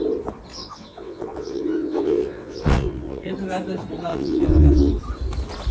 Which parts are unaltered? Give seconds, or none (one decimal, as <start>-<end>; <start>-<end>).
0.0-0.5; 3.3-4.1; 4.9-5.7